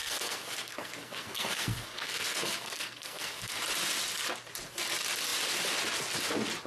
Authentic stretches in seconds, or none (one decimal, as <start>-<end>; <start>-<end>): 3.6-6.7